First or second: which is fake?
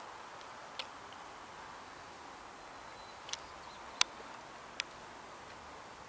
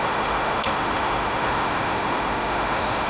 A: second